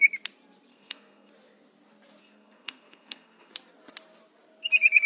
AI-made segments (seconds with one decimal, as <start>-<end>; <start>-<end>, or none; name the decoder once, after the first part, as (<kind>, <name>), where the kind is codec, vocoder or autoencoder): 0.7-1.3 (codec, SNAC); 2.2-3.5